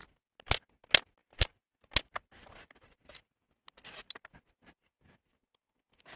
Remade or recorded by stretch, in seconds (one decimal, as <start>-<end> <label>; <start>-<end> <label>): 0.0-6.2 recorded